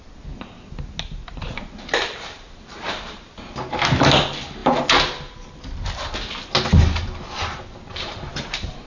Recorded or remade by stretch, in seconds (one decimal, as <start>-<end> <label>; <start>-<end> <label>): 0.0-1.2 recorded; 1.2-3.2 remade; 3.2-7.9 recorded; 7.9-8.9 remade